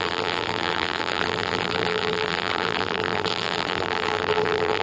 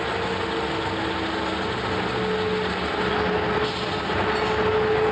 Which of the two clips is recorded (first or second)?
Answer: second